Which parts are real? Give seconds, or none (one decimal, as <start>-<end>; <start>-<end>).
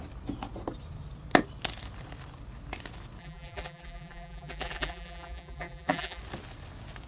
0.0-3.2; 6.2-7.1